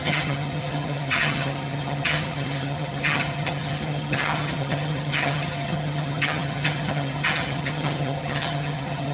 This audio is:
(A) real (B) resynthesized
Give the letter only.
B